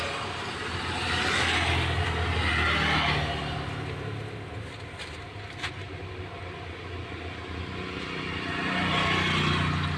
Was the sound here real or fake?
real